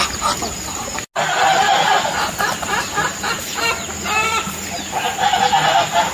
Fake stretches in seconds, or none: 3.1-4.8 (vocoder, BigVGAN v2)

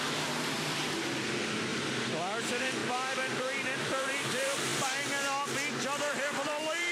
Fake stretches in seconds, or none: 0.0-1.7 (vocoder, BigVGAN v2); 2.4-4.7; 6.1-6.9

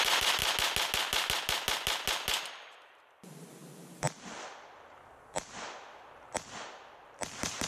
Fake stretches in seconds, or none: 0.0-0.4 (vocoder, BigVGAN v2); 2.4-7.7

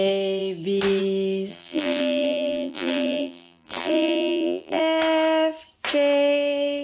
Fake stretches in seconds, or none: 1.5-4.8 (vocoder, BigVGAN v2)

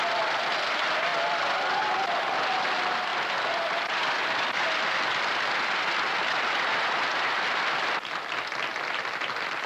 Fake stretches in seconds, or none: 1.1-1.8 (vocoder, BigVGAN v2); 3.1-4.0; 8.7-9.7

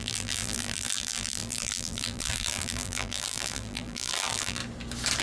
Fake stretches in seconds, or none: 0.0-4.6 (vocoder, BigVGAN v2)

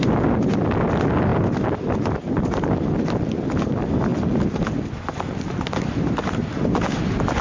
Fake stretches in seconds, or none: none

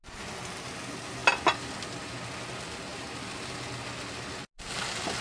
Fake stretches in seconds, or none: none